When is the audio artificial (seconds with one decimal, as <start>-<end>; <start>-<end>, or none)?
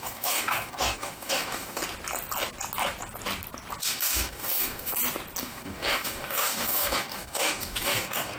0.0-1.8; 3.8-4.9; 5.4-8.4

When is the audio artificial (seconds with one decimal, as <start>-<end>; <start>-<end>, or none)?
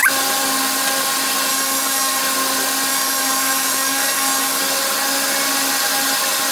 1.5-2.2; 2.9-4.6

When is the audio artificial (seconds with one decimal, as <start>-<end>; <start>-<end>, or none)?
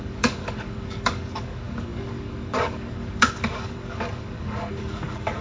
0.0-5.4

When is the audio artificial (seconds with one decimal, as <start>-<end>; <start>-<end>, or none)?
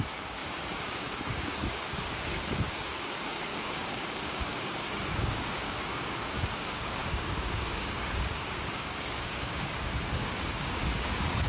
0.0-11.5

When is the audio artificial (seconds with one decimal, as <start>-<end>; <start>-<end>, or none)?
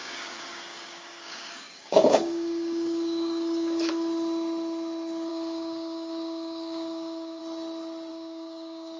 0.0-3.9; 5.3-7.4; 8.1-9.0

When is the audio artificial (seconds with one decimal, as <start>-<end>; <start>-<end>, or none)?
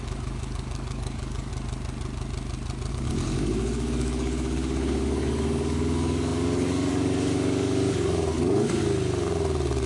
0.0-1.5; 2.9-8.8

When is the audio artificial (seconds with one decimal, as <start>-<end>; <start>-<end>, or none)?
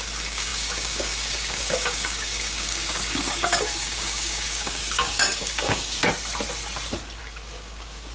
0.0-6.0; 7.2-8.1